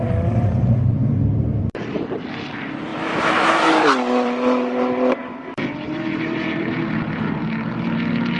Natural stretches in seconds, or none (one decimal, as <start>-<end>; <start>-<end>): 7.4-8.4